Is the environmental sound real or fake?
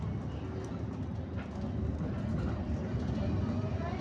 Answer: real